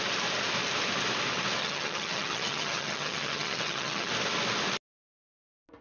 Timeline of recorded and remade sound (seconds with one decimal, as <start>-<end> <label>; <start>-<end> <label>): 0.0-1.6 recorded; 1.6-4.1 remade; 4.1-5.8 recorded